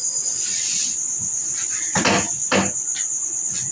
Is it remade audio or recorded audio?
recorded